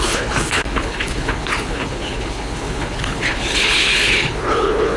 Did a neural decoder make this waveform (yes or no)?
yes